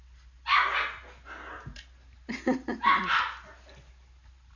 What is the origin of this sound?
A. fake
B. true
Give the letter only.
B